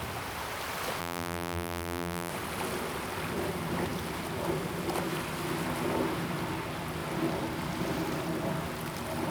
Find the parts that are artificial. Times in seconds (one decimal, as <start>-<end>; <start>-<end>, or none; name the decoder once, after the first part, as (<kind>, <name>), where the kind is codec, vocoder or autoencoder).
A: 1.0-2.3 (vocoder, BigVGAN v2)